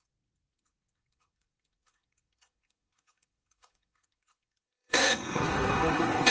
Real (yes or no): no